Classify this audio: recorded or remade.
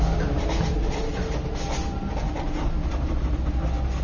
recorded